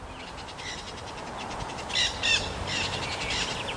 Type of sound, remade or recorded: recorded